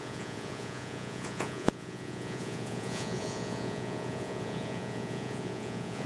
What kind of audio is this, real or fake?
fake